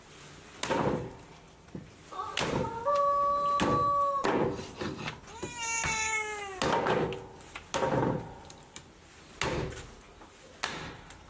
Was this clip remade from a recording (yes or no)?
no